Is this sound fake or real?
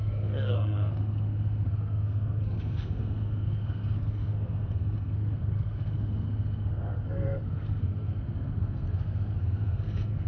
fake